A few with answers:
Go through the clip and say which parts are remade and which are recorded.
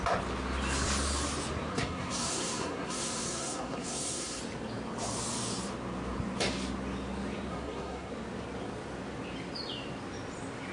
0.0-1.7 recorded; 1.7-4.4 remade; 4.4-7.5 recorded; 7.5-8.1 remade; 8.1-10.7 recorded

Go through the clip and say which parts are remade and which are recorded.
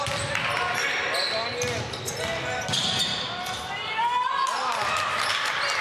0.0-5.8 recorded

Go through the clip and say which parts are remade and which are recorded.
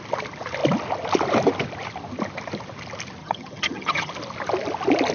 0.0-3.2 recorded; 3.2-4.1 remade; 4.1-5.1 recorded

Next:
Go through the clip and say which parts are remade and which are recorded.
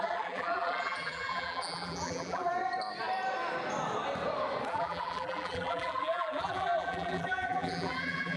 0.0-2.5 remade; 2.5-4.7 recorded; 4.7-8.4 remade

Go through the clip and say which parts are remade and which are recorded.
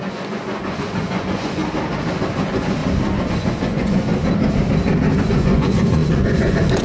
0.0-1.6 remade; 1.6-2.3 recorded; 2.3-2.8 remade; 2.8-3.3 recorded; 3.3-4.1 remade; 4.1-5.2 recorded; 5.2-6.8 remade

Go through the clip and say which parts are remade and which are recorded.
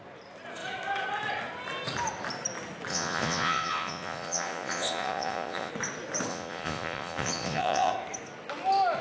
0.0-2.9 recorded; 2.9-5.7 remade; 5.7-6.3 recorded; 6.3-7.9 remade; 7.9-9.0 recorded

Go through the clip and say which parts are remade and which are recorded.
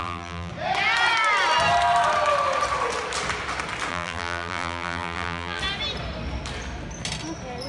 0.0-0.5 remade; 0.5-3.9 recorded; 3.9-5.6 remade; 5.6-7.7 recorded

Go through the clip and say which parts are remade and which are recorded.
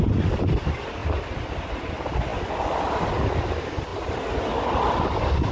0.0-5.5 recorded